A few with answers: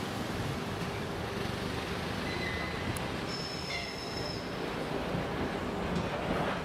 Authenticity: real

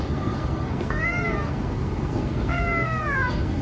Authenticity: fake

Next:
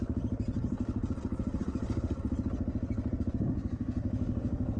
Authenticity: real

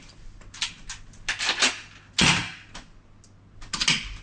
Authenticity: real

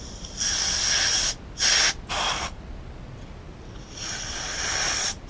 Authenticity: real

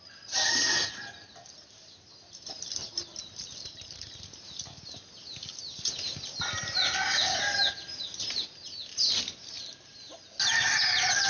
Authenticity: real